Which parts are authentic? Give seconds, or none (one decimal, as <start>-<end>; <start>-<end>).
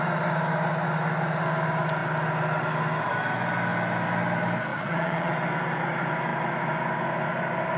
0.0-4.7; 5.3-7.8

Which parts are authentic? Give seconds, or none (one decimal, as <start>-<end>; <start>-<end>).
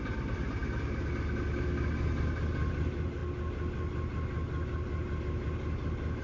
0.0-6.2